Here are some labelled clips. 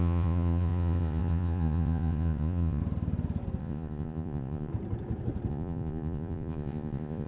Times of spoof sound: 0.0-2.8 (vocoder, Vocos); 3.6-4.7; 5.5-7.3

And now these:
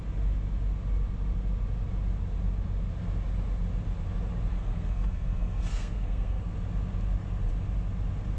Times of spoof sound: 4.5-6.4 (codec, SNAC)

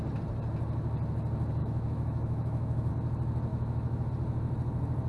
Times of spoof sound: 1.6-2.9 (autoencoder, DAC-VAE); 3.5-4.1

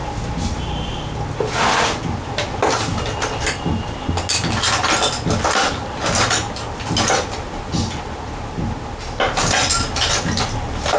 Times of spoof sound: none

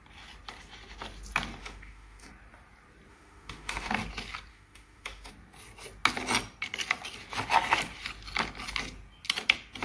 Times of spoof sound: 1.6-2.3 (autoencoder, DAC-VAE); 3.1-3.9; 4.5-5.3

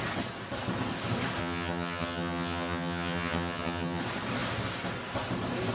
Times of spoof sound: 1.4-4.0 (vocoder, HiFi-GAN)

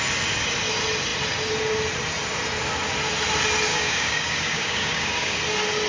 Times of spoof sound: 3.7-5.4 (codec, DAC)